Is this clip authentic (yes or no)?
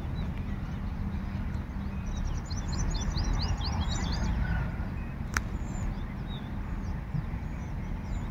yes